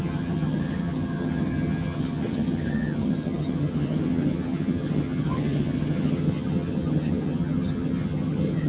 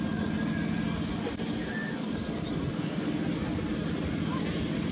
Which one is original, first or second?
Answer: second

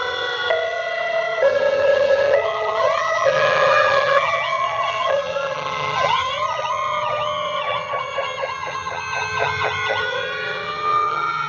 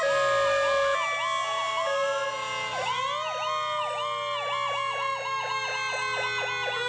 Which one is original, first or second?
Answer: second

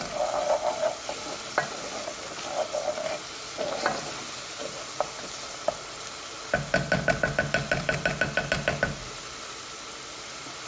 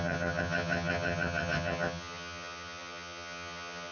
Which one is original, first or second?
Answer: first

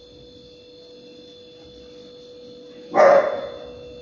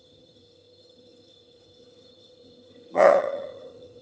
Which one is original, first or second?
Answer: first